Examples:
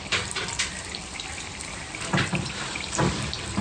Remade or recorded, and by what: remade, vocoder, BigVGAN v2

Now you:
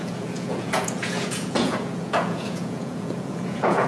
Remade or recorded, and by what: remade, vocoder, Vocos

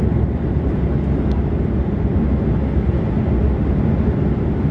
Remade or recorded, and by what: recorded